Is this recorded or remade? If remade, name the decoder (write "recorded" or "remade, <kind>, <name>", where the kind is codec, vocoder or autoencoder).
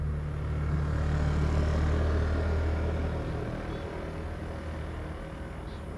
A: recorded